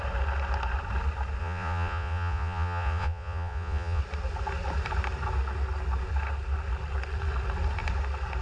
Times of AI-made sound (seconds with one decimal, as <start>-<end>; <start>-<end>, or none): 1.4-4.0